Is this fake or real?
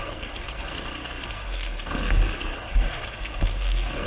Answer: fake